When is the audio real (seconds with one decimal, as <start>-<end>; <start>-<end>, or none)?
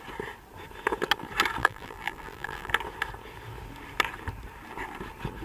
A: 0.0-1.6; 2.7-5.4